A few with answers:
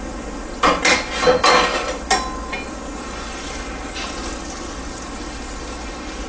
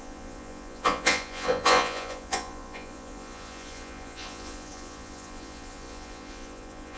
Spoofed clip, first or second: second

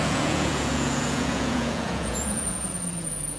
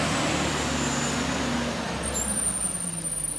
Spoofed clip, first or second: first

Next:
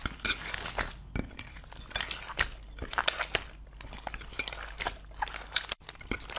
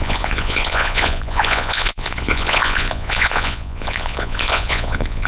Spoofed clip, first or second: second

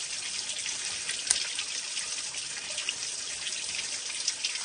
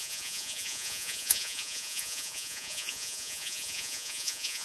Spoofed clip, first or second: second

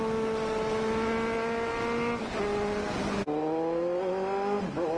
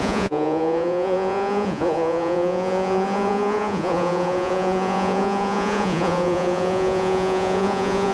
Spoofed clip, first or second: second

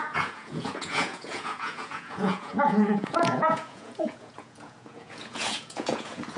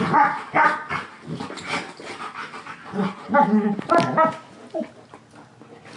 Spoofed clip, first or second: first